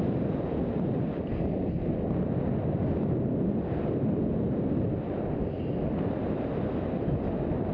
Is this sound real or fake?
real